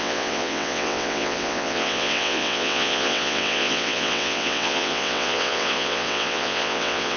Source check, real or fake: fake